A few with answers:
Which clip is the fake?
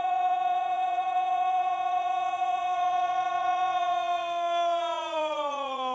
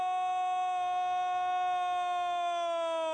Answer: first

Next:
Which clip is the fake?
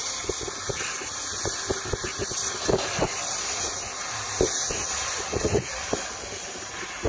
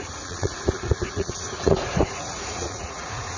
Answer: second